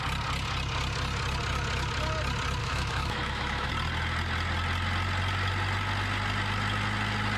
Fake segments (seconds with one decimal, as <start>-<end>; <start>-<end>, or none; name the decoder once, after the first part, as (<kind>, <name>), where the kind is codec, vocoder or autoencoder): 2.6-3.7 (autoencoder, DAC-VAE)